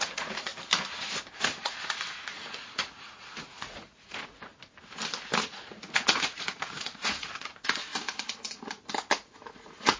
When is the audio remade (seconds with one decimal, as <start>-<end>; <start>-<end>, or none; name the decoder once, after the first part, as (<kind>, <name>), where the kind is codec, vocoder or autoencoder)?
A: 0.0-0.5 (vocoder, Vocos); 1.6-4.5; 5.4-7.9; 9.6-10.0